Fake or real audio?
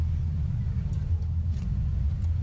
real